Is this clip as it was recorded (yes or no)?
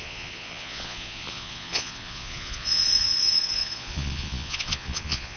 no